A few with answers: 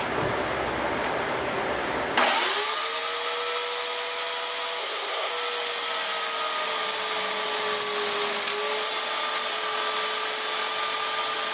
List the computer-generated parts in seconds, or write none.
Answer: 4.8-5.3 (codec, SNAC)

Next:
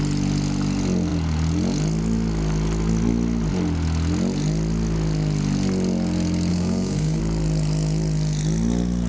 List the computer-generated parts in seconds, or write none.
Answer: 6.5-7.2 (codec, SNAC)

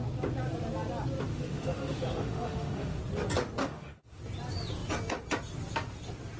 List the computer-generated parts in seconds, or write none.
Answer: 1.3-3.0 (autoencoder, DAC-VAE); 3.6-4.2